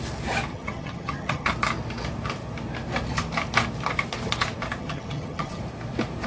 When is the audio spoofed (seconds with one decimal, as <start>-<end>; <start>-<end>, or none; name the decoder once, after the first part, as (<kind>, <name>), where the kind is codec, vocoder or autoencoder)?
0.5-1.5 (vocoder, HiFi-GAN); 4.8-5.6

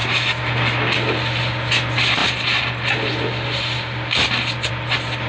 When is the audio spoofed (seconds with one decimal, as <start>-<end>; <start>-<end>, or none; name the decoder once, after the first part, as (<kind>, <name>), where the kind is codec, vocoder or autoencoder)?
none

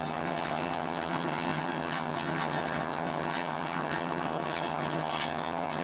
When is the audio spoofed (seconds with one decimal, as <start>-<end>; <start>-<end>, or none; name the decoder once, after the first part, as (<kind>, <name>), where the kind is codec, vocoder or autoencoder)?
0.0-5.8 (vocoder, HiFi-GAN)

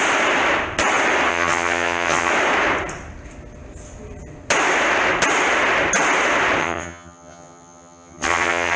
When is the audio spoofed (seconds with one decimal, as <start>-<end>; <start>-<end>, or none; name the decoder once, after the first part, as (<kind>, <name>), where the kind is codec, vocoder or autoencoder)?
1.3-2.3 (vocoder, HiFi-GAN); 6.6-8.8